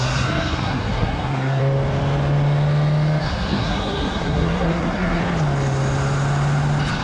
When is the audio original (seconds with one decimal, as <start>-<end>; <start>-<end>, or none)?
1.6-3.2; 5.2-7.0